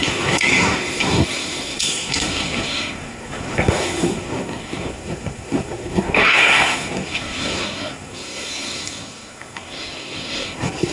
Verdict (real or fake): fake